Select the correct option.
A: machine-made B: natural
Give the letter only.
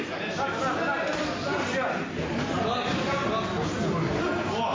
B